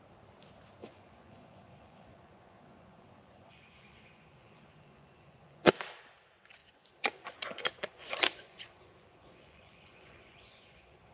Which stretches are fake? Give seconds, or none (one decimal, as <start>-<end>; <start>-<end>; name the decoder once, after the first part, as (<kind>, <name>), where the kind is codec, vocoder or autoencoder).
0.8-5.7 (vocoder, Vocos); 6.6-11.1